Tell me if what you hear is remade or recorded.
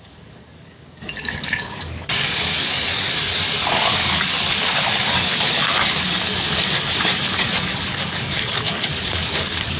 remade